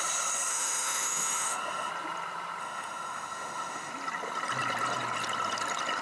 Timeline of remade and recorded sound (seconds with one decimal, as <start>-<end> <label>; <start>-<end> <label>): 0.0-0.5 recorded; 0.5-1.9 remade; 1.9-2.6 recorded; 2.6-3.9 remade; 3.9-6.0 recorded